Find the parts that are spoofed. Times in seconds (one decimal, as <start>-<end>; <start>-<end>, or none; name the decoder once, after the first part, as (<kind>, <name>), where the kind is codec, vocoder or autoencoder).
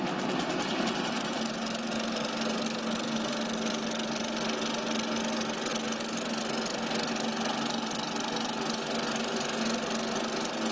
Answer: none